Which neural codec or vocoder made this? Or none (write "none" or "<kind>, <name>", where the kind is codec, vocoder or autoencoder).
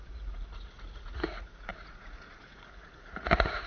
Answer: vocoder, Vocos